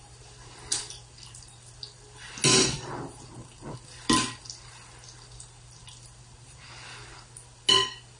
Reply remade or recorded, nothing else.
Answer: recorded